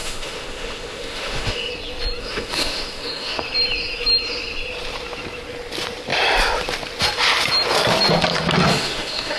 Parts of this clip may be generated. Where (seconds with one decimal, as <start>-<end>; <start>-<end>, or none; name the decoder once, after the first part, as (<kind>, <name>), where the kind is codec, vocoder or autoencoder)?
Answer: 0.0-1.7 (autoencoder, DAC-VAE); 2.2-3.4; 8.7-9.4